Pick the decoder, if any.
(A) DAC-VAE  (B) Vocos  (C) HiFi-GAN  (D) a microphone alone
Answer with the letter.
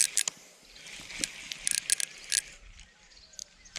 D